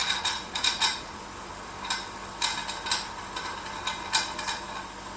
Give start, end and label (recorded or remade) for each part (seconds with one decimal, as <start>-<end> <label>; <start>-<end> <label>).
0.0-1.2 remade; 1.2-5.2 recorded